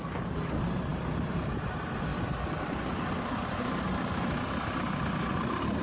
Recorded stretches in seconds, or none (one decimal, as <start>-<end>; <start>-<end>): 2.1-5.3